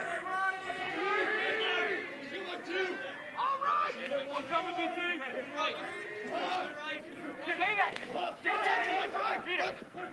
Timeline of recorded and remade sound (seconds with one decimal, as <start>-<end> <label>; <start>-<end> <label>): 0.0-1.4 remade; 1.4-3.9 recorded; 3.9-5.3 remade; 5.3-7.5 recorded; 7.5-9.2 remade; 9.2-9.7 recorded; 9.7-10.1 remade